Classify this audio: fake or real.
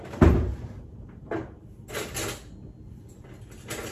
real